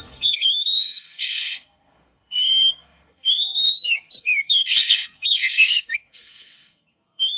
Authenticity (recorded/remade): remade